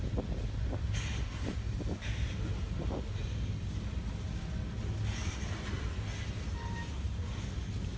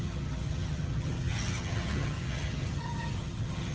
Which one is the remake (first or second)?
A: second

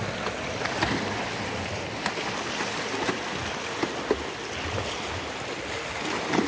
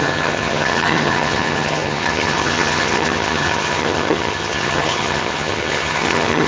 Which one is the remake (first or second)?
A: second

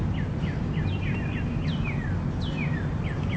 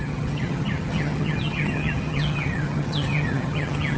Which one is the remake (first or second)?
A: second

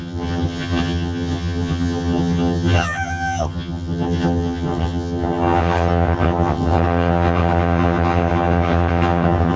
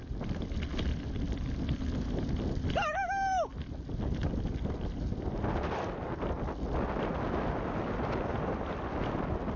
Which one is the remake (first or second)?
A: first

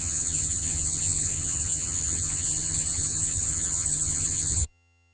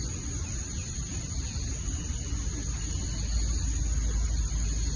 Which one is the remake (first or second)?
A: first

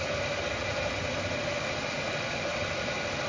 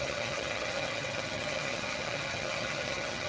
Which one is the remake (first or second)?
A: second